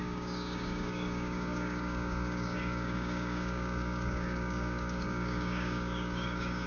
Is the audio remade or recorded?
remade